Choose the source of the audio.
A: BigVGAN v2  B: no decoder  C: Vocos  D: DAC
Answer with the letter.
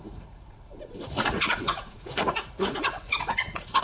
C